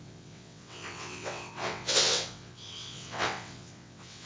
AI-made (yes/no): yes